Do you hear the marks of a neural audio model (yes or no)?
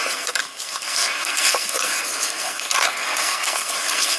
yes